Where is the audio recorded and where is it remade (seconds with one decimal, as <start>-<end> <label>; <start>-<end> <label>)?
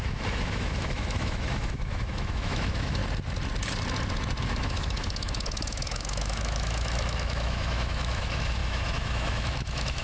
0.0-3.0 remade; 3.0-4.4 recorded; 4.4-10.0 remade